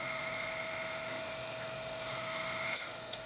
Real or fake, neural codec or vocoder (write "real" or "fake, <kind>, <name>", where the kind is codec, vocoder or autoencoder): fake, autoencoder, DAC-VAE